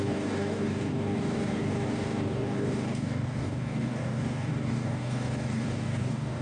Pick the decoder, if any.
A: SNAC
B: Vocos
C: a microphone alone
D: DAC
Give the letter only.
D